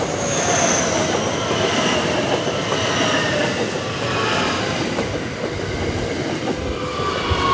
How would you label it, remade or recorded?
recorded